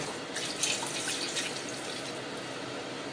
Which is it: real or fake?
real